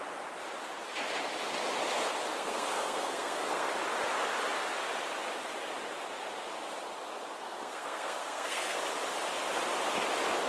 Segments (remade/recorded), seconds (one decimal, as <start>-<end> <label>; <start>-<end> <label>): 0.0-2.3 recorded; 2.3-3.7 remade; 3.7-7.4 recorded; 7.4-8.8 remade; 8.8-10.5 recorded

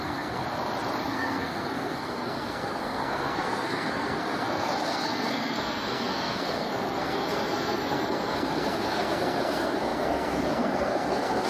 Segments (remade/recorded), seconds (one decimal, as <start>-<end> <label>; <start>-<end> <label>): 0.0-0.4 remade; 0.4-1.0 recorded; 1.0-11.5 remade